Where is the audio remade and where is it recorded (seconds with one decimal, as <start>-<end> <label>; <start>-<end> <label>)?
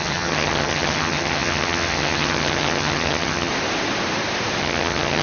0.0-3.5 remade; 3.5-4.6 recorded; 4.6-5.2 remade